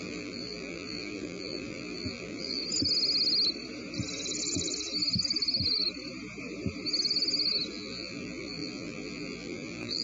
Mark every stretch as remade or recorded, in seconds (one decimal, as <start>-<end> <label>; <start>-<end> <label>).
0.0-2.6 remade; 2.6-7.7 recorded; 7.7-10.0 remade